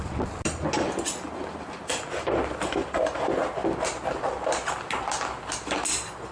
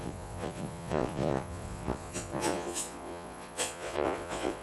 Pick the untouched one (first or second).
first